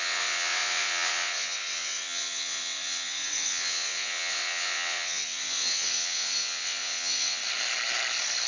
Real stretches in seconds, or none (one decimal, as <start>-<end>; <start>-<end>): 7.4-8.5